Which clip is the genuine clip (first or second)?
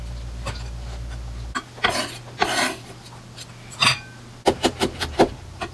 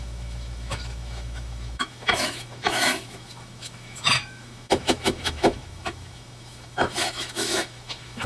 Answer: first